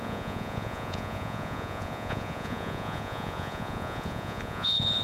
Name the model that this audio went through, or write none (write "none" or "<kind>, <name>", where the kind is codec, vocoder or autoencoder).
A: vocoder, Vocos